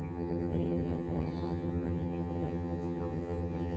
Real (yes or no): no